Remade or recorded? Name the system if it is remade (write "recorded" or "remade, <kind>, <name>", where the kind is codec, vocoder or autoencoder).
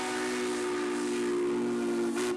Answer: recorded